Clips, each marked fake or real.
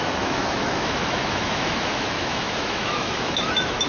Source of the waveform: fake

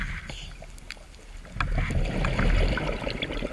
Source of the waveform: real